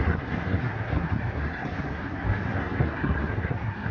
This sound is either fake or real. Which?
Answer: fake